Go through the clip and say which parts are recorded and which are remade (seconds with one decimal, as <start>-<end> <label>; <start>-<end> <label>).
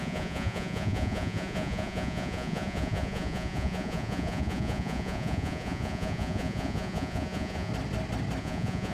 0.0-7.7 remade; 7.7-8.4 recorded; 8.4-8.9 remade